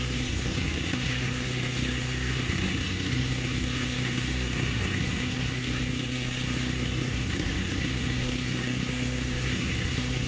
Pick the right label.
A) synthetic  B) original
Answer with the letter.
A